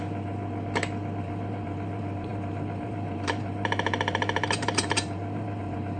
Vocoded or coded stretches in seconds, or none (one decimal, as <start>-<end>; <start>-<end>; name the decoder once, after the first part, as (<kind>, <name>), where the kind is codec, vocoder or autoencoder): 0.0-0.4 (vocoder, BigVGAN v2); 1.2-6.0

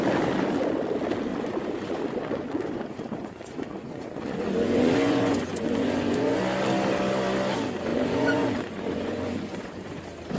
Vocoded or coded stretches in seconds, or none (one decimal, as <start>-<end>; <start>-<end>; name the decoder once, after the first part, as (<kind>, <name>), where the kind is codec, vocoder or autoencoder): 1.3-6.4 (vocoder, Vocos); 7.9-10.0

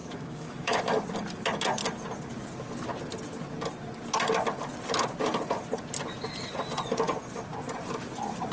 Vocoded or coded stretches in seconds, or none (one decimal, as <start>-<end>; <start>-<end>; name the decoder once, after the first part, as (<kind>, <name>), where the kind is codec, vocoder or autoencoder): 0.0-0.8 (autoencoder, DAC-VAE)